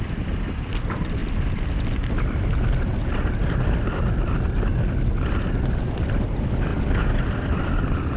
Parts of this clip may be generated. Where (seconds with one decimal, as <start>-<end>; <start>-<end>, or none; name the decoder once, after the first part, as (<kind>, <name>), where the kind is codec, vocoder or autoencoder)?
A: 0.0-1.2 (vocoder, BigVGAN v2); 6.1-6.7; 7.6-8.2